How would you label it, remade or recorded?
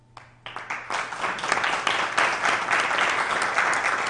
recorded